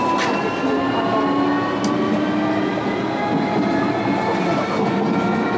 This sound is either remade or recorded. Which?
recorded